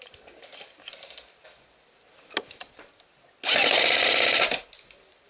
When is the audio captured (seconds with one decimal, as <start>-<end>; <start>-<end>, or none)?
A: 0.0-5.3